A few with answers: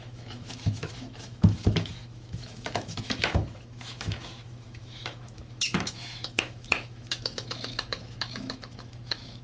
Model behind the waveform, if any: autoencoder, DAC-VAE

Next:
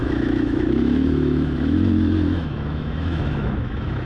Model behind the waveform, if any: autoencoder, DAC-VAE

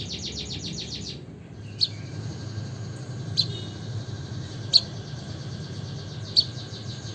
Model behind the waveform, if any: none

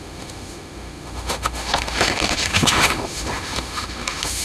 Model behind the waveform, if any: autoencoder, DAC-VAE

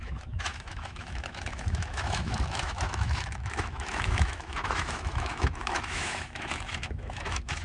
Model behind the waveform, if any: autoencoder, DAC-VAE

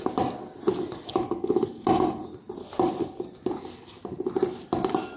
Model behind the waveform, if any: none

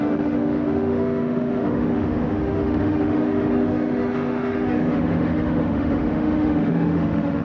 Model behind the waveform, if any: autoencoder, DAC-VAE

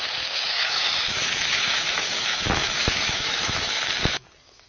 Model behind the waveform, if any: autoencoder, DAC-VAE